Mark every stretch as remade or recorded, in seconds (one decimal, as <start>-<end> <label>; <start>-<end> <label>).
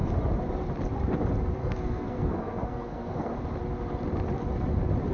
0.0-1.6 recorded; 1.6-3.3 remade; 3.3-5.1 recorded